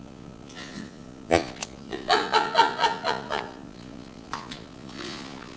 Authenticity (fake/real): fake